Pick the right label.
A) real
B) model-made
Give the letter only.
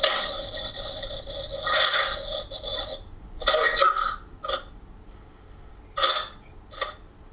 A